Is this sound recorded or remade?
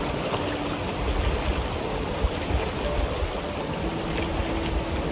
recorded